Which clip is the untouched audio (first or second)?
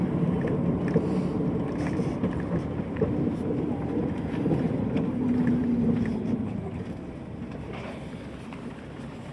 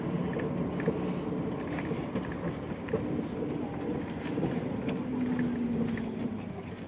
second